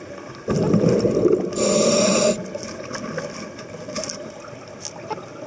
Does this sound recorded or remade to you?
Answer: recorded